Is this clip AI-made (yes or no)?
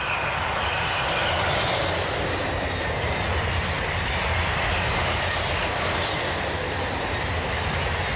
no